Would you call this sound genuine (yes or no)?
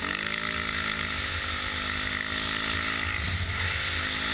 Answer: yes